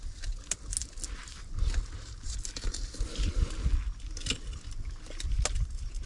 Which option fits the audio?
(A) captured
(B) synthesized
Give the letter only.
A